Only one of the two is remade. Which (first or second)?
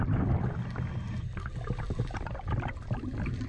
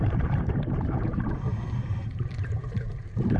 second